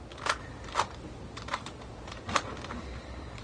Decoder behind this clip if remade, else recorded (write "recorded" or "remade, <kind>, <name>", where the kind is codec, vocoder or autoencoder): recorded